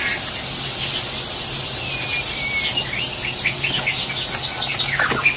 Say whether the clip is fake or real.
real